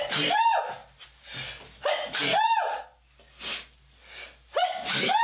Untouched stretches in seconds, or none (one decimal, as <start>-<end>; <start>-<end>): 0.0-5.2